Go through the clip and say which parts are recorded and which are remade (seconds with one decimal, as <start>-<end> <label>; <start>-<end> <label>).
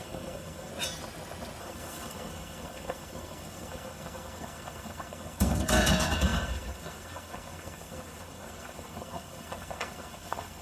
0.0-0.7 remade; 0.7-1.6 recorded; 1.6-10.6 remade